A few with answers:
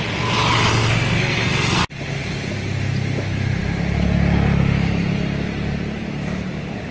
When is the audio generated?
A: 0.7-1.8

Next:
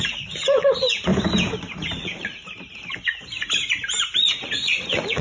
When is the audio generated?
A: 0.0-1.1; 1.9-2.4; 4.4-5.2

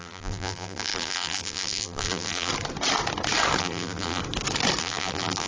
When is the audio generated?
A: 0.0-2.5; 3.6-4.2; 4.8-5.5